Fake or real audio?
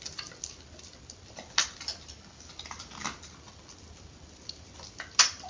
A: real